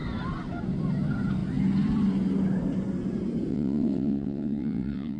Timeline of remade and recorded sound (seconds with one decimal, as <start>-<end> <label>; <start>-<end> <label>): 0.0-3.5 recorded; 3.5-5.2 remade